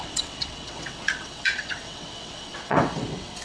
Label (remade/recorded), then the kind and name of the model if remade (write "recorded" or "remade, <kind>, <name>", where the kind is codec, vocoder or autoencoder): remade, vocoder, WaveNeXt